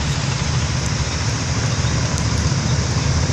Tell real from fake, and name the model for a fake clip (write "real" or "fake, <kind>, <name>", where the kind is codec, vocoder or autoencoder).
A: real